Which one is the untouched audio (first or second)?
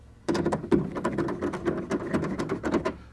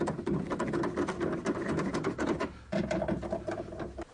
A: first